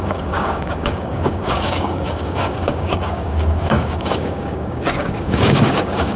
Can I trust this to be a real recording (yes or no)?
no